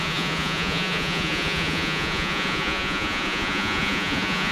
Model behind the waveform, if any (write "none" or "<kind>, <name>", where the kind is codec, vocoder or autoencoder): vocoder, Vocos